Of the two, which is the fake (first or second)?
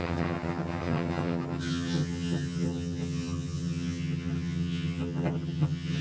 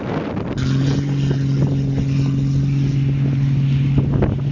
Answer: first